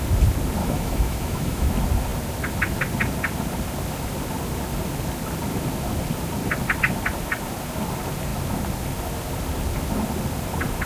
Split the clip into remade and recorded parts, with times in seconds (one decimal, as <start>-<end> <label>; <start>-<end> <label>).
0.0-0.6 recorded; 0.6-1.7 remade; 1.7-10.9 recorded